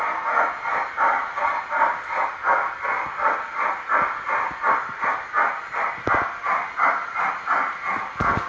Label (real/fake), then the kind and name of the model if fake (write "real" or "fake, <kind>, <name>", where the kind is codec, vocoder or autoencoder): real